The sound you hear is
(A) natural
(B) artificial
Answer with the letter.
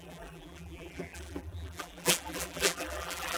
B